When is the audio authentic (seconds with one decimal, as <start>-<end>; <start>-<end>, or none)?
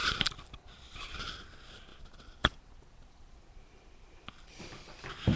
1.3-1.9; 4.6-5.4